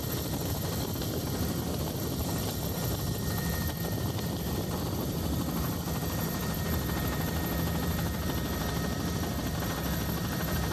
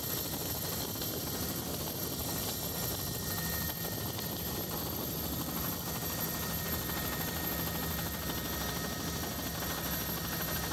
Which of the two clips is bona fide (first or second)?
second